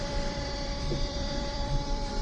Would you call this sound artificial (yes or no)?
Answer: yes